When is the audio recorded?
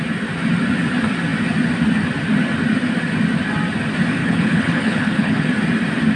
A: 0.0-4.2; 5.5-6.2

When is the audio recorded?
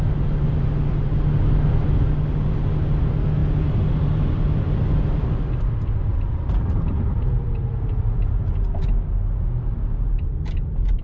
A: 0.0-6.1; 8.5-11.0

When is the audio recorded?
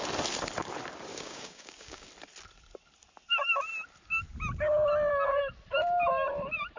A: 0.0-1.1; 2.1-6.8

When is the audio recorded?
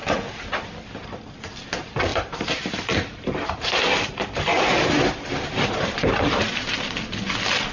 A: 0.0-2.1; 6.7-7.7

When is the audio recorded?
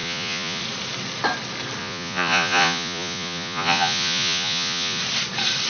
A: 0.6-1.8; 5.0-5.7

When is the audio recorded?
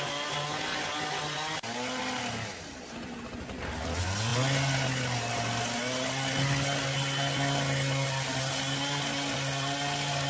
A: 0.0-10.3